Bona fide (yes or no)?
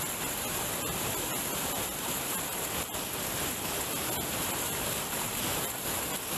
yes